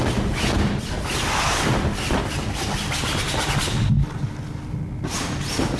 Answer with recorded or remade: recorded